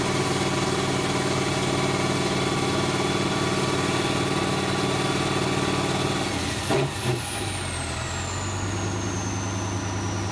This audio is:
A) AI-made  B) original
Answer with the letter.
B